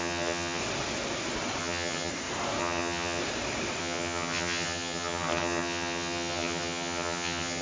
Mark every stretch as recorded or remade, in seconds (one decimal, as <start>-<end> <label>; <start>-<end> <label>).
0.0-0.6 remade; 0.6-1.6 recorded; 1.6-2.1 remade; 2.1-2.6 recorded; 2.6-3.2 remade; 3.2-3.8 recorded; 3.8-7.6 remade